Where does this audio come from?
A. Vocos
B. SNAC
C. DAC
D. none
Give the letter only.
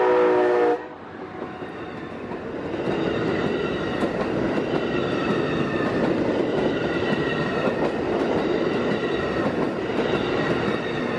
D